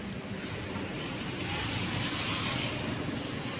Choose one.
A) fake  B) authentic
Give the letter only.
B